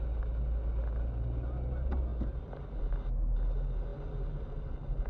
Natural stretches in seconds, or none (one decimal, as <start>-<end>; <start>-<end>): 0.0-2.1; 2.8-5.1